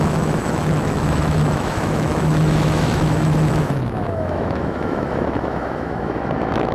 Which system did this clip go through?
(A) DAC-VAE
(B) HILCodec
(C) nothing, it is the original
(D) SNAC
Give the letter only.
A